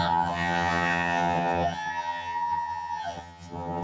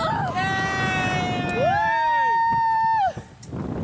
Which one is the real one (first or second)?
second